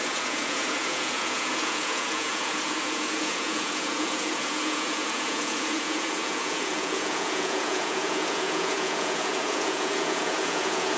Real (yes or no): no